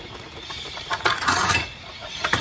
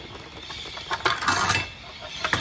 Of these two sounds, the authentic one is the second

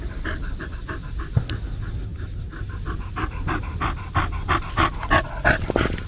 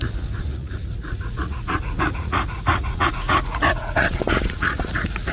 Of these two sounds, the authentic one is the first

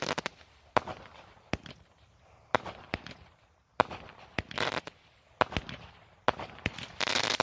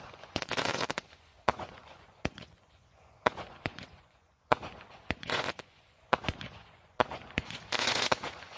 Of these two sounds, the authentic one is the first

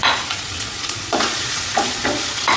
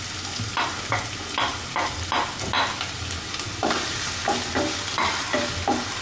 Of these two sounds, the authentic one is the second